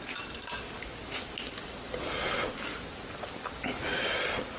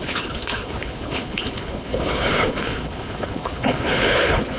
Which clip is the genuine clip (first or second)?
first